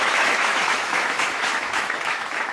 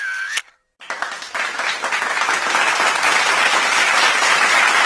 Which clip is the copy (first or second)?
first